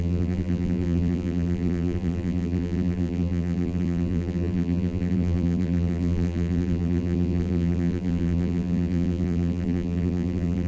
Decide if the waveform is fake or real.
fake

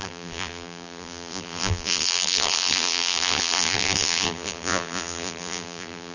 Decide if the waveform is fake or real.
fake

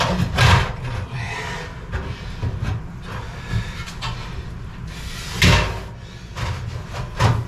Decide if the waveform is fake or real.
real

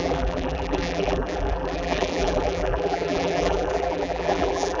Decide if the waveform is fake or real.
fake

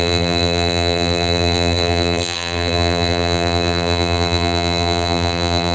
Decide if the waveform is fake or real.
fake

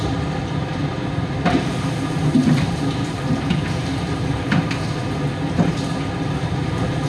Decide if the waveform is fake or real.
fake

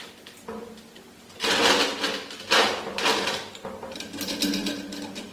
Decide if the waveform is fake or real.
fake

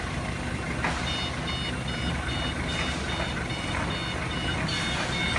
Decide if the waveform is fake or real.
real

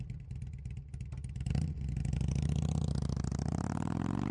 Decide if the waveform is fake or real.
real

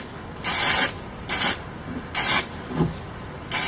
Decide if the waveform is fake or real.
real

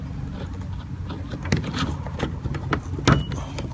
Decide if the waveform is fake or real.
real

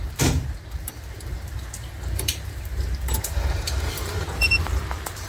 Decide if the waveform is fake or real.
fake